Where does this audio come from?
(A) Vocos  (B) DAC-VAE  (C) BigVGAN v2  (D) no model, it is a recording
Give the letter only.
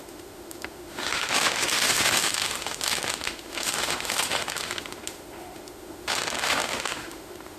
B